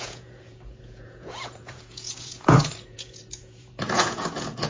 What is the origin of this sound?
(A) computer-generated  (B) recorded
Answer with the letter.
A